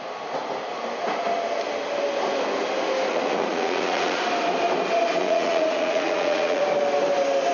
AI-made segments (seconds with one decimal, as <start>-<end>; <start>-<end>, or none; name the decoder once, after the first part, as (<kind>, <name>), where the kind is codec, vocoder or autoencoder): 3.1-4.2 (vocoder, Vocos); 5.2-6.6